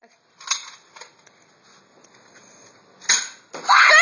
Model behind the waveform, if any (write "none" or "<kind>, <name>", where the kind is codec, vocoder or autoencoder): none